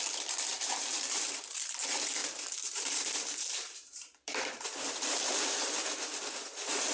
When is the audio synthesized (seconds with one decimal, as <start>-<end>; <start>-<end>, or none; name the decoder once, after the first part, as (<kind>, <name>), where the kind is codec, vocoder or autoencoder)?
0.0-6.9 (vocoder, BigVGAN v2)